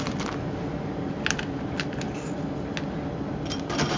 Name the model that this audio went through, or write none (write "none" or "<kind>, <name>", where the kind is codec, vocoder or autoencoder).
none